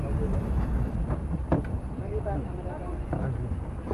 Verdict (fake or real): real